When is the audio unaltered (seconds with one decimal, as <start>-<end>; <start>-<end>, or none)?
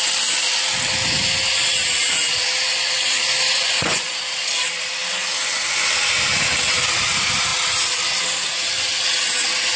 0.0-3.5; 4.1-9.8